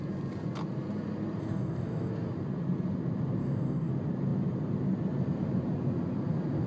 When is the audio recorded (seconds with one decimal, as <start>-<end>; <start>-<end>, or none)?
0.0-1.4; 2.1-3.4; 3.9-6.7